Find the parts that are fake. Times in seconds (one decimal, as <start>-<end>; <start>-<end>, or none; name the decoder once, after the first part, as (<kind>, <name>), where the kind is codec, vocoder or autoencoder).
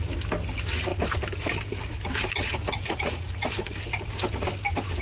2.8-3.3 (vocoder, Vocos)